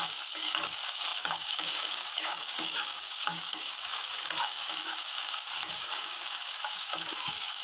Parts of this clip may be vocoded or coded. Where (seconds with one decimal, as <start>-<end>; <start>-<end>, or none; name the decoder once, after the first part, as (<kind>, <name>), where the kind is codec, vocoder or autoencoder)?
0.0-7.6 (codec, DAC)